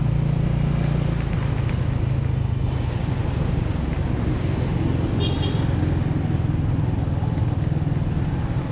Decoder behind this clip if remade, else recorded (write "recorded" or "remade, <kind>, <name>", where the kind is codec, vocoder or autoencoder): recorded